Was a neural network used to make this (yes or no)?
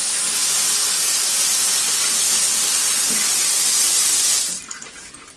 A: no